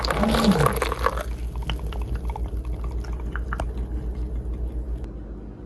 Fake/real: real